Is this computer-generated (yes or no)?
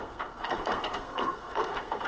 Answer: yes